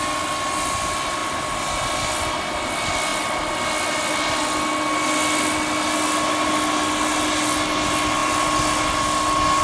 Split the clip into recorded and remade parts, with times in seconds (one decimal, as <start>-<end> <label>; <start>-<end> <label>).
0.0-9.6 recorded